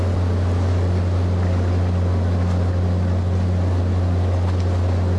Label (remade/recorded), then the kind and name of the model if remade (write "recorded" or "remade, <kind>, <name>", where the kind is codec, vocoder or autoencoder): recorded